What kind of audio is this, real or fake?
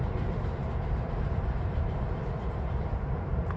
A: fake